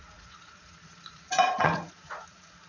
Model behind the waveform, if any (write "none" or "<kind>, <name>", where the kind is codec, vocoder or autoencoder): vocoder, Vocos